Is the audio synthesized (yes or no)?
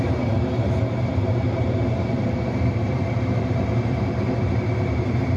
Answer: yes